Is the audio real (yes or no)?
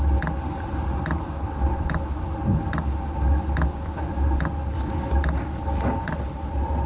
yes